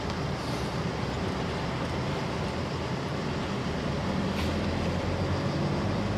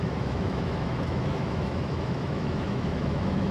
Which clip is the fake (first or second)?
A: second